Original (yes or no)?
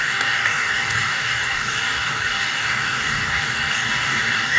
no